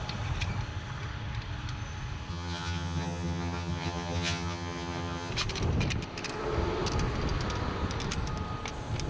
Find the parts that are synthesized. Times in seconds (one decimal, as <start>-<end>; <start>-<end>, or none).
2.3-5.3